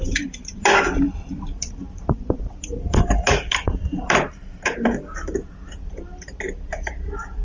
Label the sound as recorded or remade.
remade